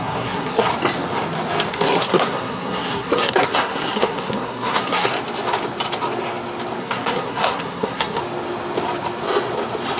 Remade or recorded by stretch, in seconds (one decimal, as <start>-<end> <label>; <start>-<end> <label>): 0.0-0.7 remade; 0.7-1.7 recorded; 1.7-5.1 remade; 5.1-6.8 recorded; 6.8-8.2 remade; 8.2-10.0 recorded